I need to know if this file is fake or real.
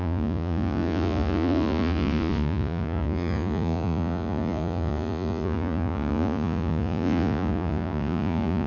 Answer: fake